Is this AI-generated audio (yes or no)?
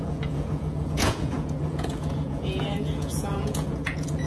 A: yes